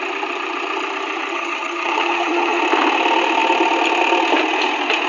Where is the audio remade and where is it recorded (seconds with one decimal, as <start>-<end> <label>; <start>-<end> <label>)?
0.0-1.3 recorded; 1.3-2.6 remade; 2.6-5.1 recorded